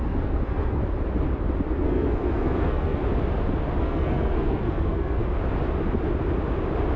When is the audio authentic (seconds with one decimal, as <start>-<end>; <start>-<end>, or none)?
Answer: 0.8-1.8; 3.0-3.8; 5.2-7.0